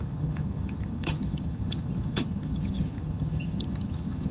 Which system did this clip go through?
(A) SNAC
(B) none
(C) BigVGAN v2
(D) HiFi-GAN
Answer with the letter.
D